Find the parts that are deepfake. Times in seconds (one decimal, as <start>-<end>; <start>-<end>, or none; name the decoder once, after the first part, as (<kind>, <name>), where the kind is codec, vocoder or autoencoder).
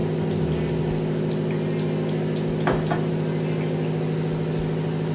none